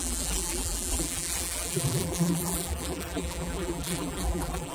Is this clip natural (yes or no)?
no